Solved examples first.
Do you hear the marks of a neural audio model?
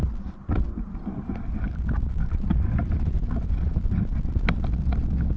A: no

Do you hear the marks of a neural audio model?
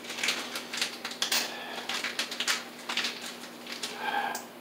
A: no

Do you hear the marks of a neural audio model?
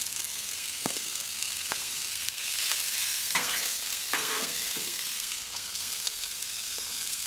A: yes